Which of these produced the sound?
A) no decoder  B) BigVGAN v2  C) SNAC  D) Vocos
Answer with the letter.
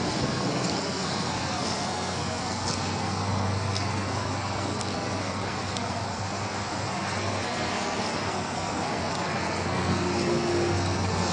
C